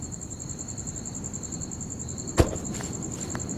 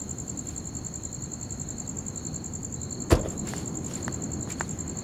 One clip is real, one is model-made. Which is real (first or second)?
second